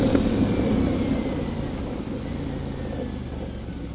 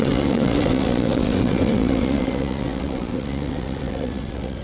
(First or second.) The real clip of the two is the first